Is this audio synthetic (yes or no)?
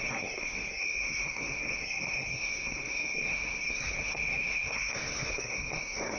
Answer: yes